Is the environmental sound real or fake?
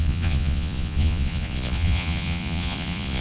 fake